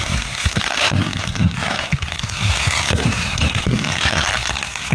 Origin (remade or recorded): remade